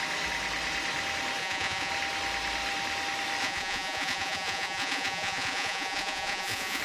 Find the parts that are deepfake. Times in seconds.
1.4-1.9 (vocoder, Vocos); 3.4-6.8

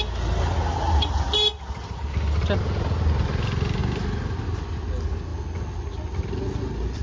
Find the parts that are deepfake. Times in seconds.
none

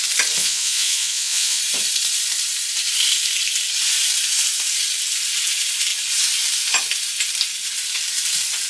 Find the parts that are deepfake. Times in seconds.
0.4-1.6 (vocoder, Vocos)

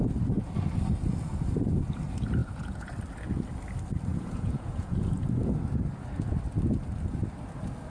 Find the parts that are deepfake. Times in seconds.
2.4-2.9 (vocoder, Vocos); 4.1-5.6

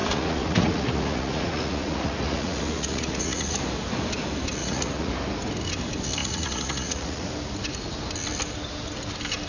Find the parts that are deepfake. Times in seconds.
0.0-3.6 (vocoder, Vocos); 4.6-5.1; 6.2-7.3